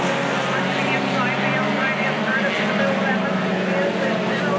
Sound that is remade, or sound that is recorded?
recorded